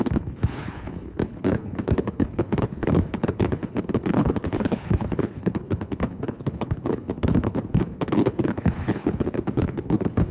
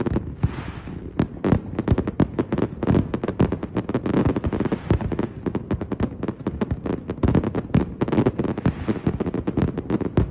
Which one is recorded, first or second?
second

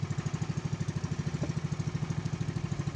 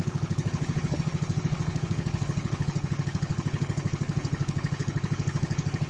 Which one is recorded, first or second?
first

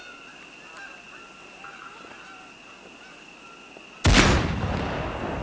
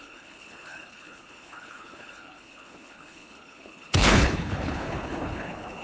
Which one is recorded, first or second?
first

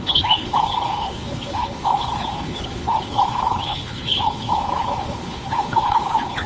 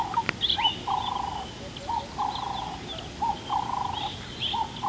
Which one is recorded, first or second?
second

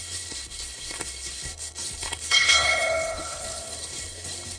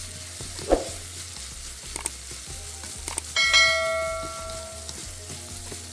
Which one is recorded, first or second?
second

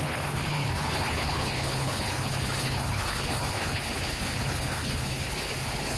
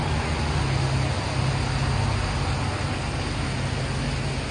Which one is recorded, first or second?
second